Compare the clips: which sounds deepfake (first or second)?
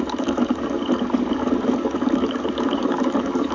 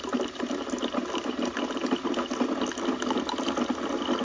first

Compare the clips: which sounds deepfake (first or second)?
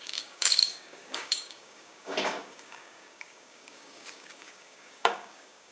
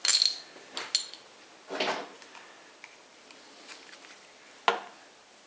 first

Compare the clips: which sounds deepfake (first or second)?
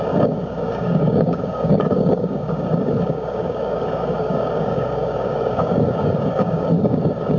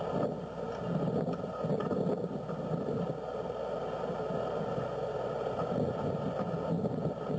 first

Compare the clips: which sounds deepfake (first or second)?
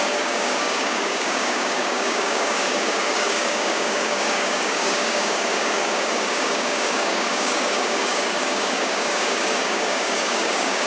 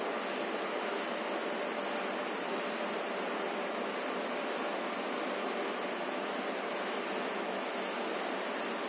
first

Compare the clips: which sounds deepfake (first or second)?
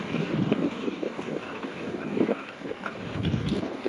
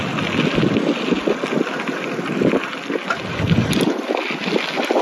first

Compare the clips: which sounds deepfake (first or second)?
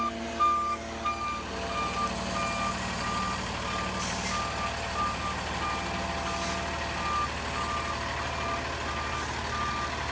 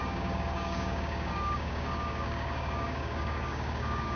second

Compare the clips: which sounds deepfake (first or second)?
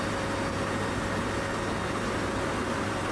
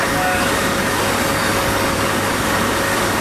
second